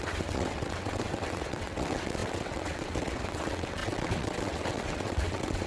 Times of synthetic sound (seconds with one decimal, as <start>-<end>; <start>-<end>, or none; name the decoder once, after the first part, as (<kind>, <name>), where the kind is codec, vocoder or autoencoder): 0.0-5.7 (vocoder, WaveNeXt)